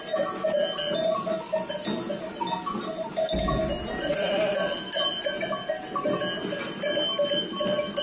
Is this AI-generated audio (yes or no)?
no